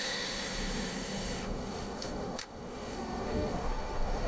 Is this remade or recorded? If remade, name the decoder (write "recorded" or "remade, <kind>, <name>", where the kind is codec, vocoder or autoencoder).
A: remade, autoencoder, DAC-VAE